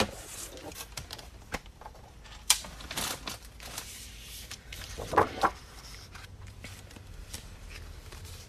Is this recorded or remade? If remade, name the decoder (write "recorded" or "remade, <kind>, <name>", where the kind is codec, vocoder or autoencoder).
remade, vocoder, BigVGAN v2